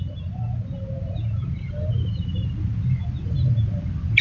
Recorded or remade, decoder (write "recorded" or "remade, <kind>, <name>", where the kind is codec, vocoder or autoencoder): recorded